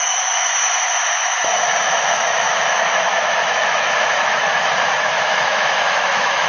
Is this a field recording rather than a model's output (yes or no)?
no